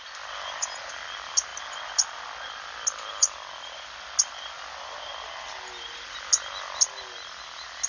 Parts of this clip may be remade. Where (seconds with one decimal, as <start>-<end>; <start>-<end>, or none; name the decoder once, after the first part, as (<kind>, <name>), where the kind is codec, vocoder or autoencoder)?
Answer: none